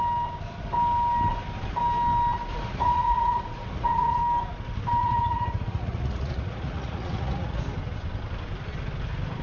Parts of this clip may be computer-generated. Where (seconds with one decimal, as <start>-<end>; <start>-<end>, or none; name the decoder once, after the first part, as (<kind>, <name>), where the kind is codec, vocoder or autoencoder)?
2.5-4.2 (vocoder, Vocos); 5.0-7.6